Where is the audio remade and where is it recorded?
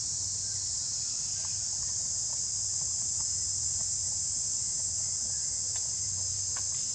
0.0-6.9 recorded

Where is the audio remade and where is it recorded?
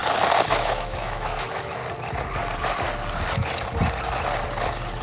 0.0-0.5 recorded; 0.5-1.8 remade; 1.8-5.0 recorded